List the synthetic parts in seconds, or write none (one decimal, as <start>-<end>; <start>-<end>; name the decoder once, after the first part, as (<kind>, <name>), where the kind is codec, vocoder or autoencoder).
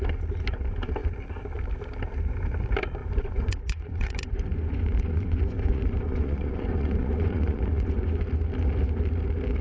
3.0-8.2 (vocoder, Vocos)